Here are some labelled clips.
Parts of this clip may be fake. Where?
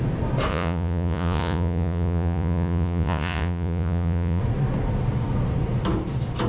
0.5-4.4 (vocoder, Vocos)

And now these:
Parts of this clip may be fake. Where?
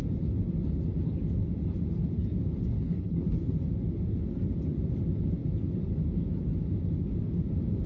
2.7-3.5 (codec, HILCodec)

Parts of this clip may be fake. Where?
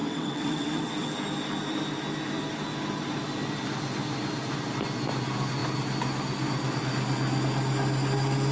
0.0-1.1 (vocoder, WaveNeXt)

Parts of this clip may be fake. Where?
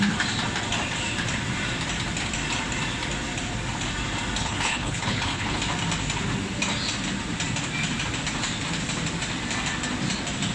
4.4-5.6 (codec, HILCodec)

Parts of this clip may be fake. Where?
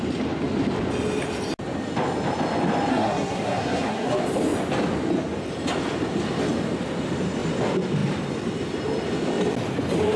2.9-4.1 (codec, SNAC)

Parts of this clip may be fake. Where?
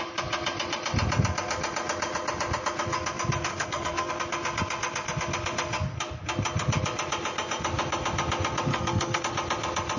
3.5-4.1 (codec, SNAC); 8.7-9.2